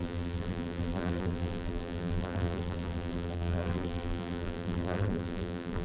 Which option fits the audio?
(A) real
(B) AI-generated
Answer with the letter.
B